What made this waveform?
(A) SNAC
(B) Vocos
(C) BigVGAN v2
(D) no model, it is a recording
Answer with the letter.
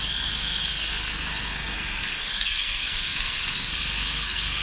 A